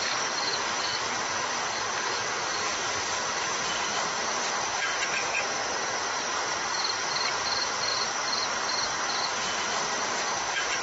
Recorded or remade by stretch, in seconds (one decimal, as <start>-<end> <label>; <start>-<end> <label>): 0.0-0.5 remade; 0.5-2.5 recorded; 2.5-7.9 remade; 7.9-9.9 recorded; 9.9-10.8 remade